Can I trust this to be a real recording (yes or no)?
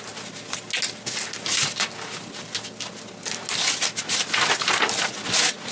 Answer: yes